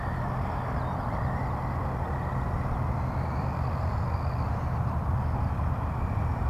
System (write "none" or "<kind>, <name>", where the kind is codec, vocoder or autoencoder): none